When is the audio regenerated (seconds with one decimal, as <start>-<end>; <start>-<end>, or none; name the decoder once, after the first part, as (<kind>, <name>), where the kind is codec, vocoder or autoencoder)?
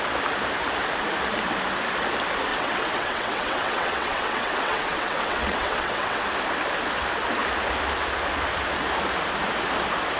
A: 2.5-6.2 (vocoder, WaveNeXt)